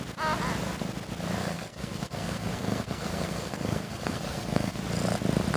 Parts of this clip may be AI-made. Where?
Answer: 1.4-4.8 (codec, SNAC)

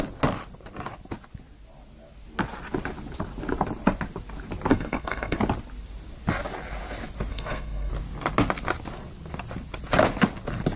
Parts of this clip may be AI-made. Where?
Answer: 4.7-5.4 (codec, SNAC); 7.3-7.9

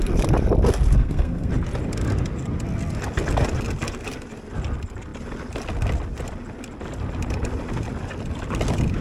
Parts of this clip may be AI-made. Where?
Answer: 1.0-1.5 (codec, SNAC)